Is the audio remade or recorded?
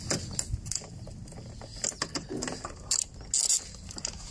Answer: recorded